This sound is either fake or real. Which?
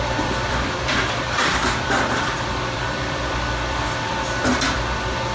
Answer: fake